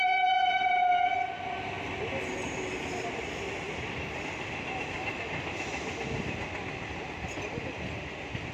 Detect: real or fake real